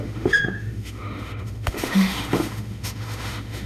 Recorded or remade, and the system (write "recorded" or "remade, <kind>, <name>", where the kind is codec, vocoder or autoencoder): remade, autoencoder, DAC-VAE